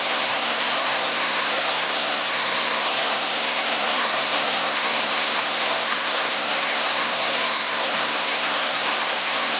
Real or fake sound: fake